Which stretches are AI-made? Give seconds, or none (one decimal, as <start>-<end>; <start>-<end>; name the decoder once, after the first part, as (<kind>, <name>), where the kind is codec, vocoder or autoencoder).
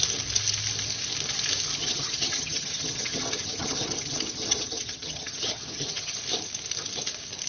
1.8-6.2 (vocoder, HiFi-GAN)